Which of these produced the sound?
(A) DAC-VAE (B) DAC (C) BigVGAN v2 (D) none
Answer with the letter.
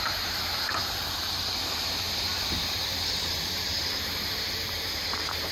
C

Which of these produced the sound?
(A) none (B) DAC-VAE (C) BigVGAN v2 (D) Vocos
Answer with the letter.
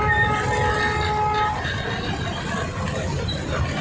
A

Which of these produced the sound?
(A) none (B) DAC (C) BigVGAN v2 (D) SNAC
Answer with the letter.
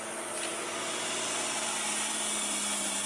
A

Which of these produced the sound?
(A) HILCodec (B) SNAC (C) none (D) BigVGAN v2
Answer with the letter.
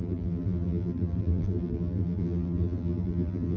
D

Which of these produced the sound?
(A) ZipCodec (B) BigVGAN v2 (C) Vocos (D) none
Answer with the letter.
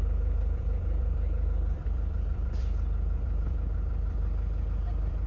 B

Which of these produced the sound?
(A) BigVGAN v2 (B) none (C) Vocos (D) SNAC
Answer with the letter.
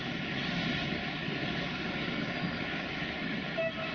A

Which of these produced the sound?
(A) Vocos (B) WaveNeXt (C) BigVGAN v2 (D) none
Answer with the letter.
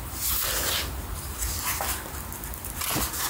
D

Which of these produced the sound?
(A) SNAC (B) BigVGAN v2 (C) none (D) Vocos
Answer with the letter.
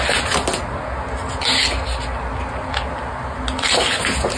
C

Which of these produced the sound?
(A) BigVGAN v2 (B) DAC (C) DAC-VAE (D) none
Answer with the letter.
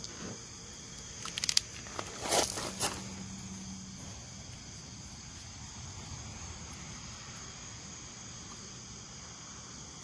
D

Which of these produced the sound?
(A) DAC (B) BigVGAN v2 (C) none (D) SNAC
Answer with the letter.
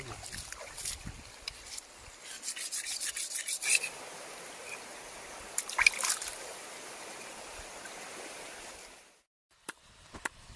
C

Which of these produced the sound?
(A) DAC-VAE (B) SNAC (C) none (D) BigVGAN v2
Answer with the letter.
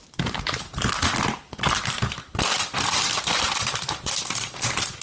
C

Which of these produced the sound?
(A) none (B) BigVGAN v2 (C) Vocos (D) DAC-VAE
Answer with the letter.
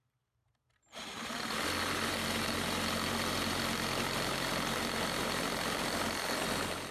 A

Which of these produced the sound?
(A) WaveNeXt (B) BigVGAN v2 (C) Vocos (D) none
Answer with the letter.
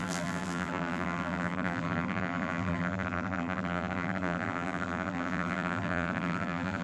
B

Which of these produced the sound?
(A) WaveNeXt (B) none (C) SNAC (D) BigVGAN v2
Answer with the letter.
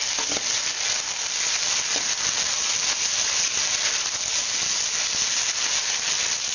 B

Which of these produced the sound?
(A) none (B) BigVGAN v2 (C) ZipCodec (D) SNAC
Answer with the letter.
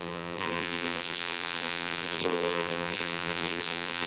B